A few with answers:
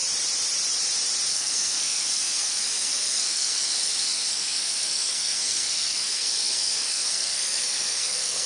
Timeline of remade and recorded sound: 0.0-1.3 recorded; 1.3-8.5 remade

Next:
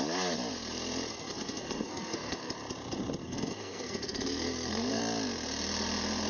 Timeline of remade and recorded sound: 0.0-1.1 recorded; 1.1-2.5 remade; 2.5-3.2 recorded; 3.2-5.0 remade; 5.0-6.3 recorded

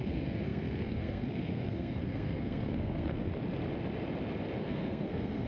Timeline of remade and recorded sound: 0.0-3.3 remade; 3.3-4.6 recorded; 4.6-5.5 remade

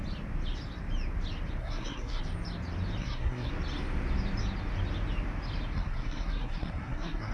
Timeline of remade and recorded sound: 0.0-1.6 recorded; 1.6-2.2 remade; 2.2-3.0 recorded; 3.0-3.5 remade; 3.5-5.7 recorded; 5.7-7.3 remade

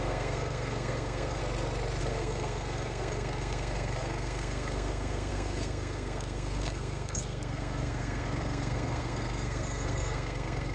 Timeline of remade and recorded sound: 0.0-1.4 remade; 1.4-2.0 recorded; 2.0-10.7 remade

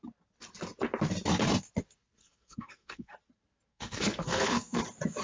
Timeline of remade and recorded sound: 0.0-2.2 recorded; 2.2-3.1 remade; 3.1-3.7 recorded; 3.7-4.8 remade; 4.8-5.2 recorded